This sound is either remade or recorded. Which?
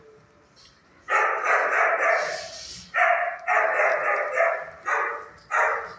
recorded